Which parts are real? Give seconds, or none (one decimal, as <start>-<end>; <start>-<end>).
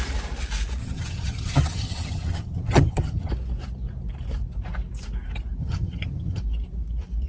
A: 0.0-0.8; 3.3-5.6; 6.4-7.3